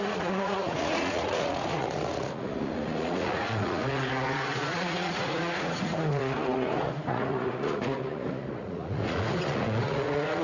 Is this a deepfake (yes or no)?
yes